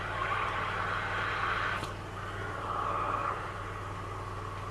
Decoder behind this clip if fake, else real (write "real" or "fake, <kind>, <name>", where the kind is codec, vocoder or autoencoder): real